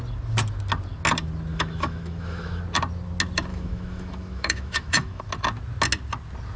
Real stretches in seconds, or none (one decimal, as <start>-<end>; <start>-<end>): 0.0-1.5; 2.6-3.5; 5.2-6.6